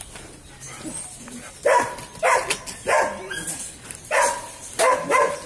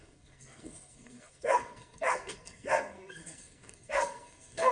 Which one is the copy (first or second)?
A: second